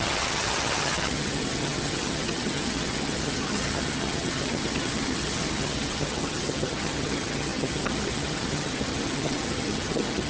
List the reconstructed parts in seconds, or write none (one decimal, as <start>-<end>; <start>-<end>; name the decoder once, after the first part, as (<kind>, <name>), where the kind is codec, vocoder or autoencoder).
0.0-10.3 (vocoder, HiFi-GAN)